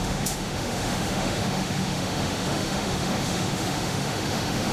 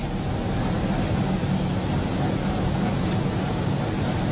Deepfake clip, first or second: first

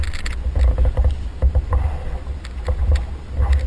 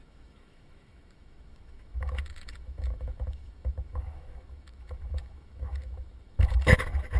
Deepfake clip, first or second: second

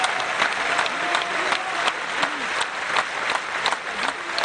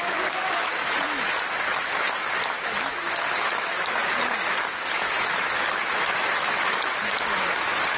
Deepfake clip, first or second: second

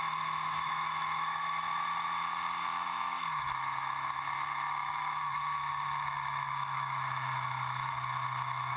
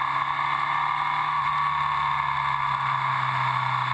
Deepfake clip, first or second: first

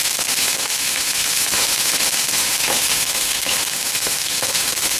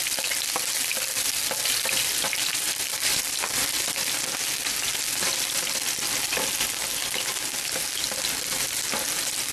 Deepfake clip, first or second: first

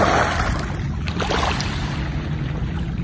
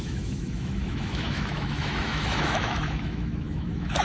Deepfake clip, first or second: second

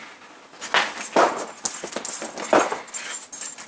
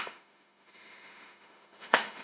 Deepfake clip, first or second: second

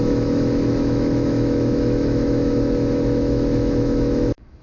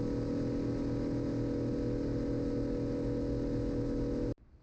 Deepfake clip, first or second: first